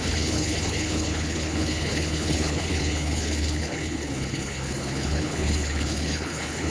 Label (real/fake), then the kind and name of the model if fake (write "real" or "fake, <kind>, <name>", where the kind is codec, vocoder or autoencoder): fake, codec, HILCodec